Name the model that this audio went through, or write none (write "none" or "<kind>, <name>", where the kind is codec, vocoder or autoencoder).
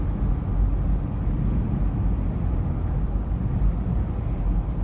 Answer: none